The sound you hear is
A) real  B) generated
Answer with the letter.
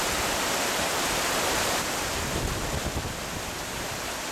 A